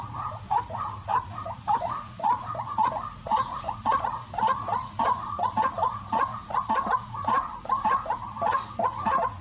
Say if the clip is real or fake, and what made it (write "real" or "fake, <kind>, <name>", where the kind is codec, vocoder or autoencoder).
fake, vocoder, Vocos